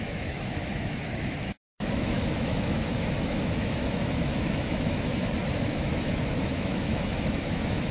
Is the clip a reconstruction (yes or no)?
yes